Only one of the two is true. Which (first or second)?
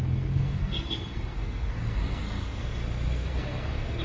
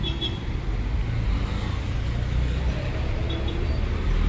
second